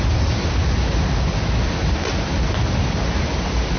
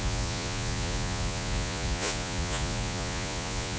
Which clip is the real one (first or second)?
first